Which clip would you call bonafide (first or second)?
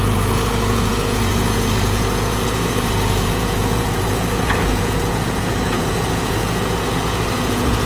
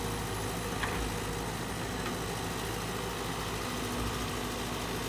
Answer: second